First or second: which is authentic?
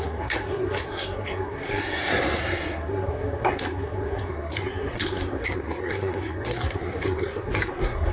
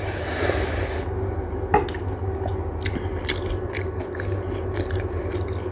second